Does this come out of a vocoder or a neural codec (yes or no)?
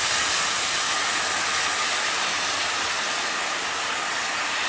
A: no